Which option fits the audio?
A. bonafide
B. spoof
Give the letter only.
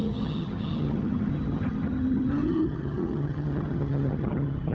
B